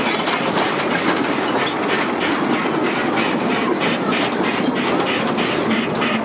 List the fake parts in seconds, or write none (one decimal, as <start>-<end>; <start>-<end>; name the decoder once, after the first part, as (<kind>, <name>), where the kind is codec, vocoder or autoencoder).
3.0-4.9 (vocoder, BigVGAN v2)